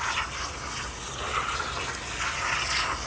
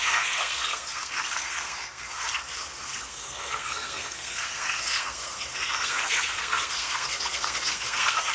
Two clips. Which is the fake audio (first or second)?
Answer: second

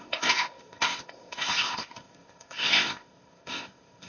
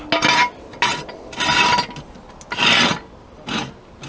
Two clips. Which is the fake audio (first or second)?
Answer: first